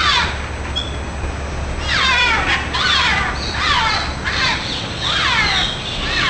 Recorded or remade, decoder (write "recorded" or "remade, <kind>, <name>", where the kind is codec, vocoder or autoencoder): recorded